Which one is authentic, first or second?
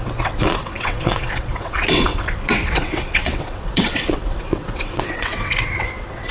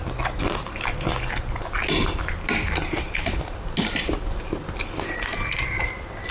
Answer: second